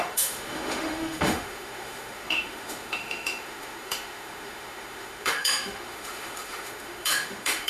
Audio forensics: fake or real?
fake